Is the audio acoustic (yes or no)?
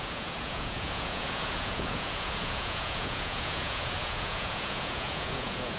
no